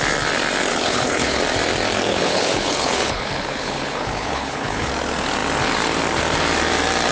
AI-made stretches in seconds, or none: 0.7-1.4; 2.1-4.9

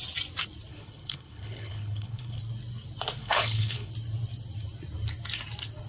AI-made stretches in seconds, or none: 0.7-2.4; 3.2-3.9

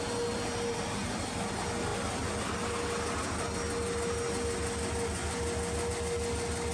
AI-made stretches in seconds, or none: none